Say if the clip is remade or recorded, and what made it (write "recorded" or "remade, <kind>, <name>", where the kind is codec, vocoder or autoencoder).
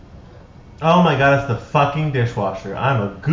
recorded